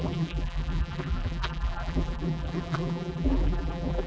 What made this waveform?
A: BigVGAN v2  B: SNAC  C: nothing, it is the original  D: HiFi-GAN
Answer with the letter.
A